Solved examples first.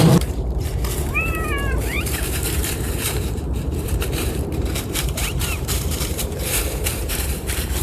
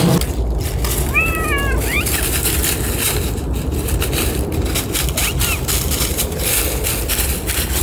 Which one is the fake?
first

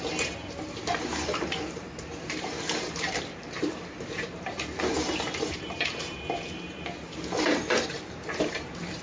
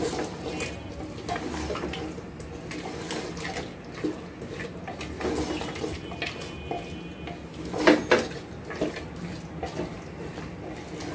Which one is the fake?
first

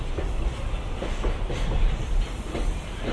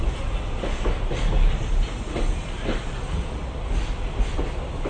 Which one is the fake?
first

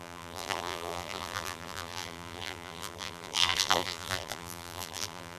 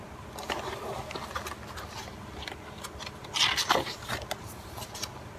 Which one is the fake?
first